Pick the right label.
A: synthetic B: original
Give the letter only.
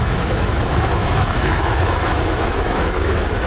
A